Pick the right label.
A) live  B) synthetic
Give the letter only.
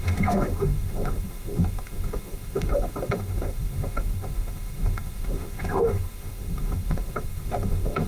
B